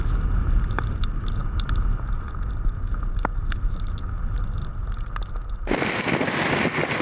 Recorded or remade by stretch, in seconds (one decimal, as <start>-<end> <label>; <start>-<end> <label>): 0.0-7.0 recorded